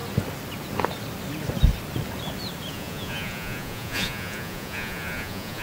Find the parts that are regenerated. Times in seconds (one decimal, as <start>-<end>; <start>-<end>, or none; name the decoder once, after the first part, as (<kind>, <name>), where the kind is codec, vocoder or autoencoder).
2.7-5.6 (vocoder, Vocos)